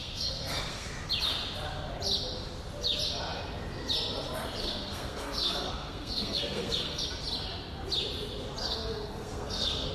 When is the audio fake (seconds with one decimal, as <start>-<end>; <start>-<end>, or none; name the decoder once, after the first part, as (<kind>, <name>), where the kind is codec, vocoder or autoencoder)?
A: 0.0-0.9 (codec, SNAC); 4.6-7.0; 8.6-9.9